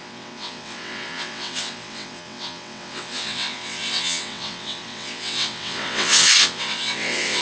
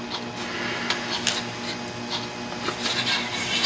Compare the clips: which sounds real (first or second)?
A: second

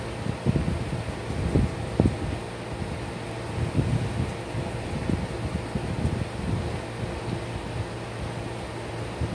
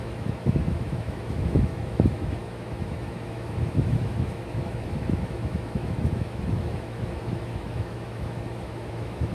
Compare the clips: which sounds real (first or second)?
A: first